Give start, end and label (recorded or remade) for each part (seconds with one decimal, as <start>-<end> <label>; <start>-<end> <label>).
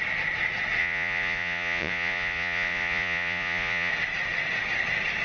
0.0-0.8 recorded; 0.8-3.9 remade; 3.9-5.2 recorded